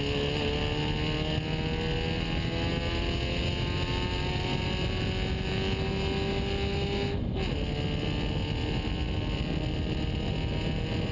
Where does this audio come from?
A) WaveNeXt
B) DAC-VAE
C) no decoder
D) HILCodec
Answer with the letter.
C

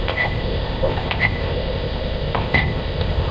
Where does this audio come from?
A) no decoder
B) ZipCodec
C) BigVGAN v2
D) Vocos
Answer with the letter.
B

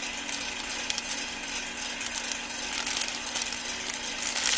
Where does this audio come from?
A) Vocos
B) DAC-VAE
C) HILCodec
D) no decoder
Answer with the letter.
D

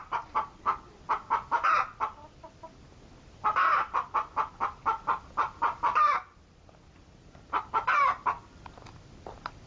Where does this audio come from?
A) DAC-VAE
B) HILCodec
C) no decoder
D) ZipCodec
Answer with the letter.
C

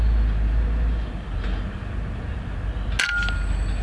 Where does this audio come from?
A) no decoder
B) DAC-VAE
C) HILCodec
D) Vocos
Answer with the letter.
A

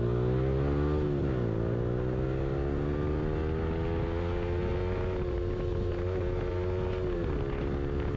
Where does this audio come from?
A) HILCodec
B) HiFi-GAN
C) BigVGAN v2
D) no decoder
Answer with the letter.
D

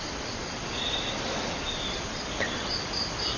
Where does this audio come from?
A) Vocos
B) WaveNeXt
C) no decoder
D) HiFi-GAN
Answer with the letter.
C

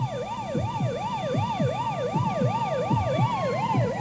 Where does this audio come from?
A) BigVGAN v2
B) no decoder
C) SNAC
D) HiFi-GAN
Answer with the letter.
A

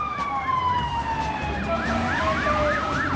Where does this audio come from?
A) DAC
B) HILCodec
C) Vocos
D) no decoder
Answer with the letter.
D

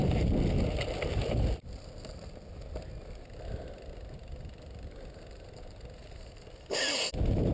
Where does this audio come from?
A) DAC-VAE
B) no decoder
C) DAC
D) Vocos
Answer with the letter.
B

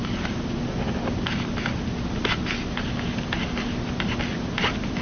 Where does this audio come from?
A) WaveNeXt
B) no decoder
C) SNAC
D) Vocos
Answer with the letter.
B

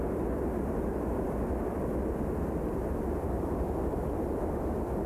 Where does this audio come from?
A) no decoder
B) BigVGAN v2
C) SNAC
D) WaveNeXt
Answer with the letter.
A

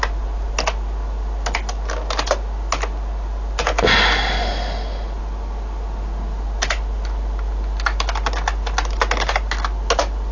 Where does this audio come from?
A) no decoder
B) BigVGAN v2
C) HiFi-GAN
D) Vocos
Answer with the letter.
A